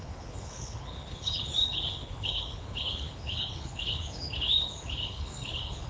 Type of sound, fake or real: fake